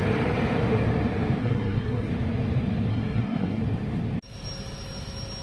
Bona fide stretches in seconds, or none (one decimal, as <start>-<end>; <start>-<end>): 0.0-1.4; 2.1-2.9; 3.6-5.4